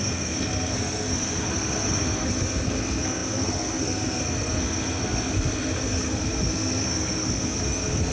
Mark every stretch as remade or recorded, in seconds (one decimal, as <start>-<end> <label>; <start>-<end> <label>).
0.0-8.1 remade